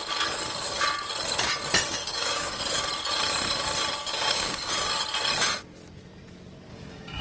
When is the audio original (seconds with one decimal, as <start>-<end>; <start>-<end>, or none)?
0.0-2.0; 2.6-4.0; 4.7-6.7